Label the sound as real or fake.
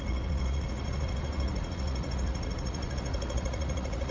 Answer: fake